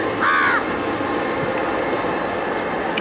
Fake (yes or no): no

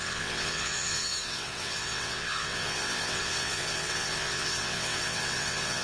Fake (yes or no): yes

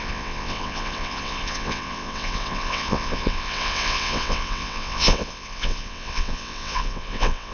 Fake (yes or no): yes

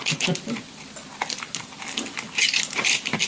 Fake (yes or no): no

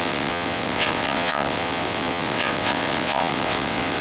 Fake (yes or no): yes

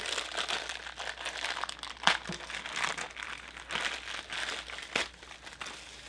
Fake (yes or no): no